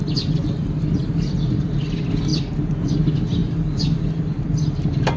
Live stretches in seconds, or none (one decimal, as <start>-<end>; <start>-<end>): 0.0-5.2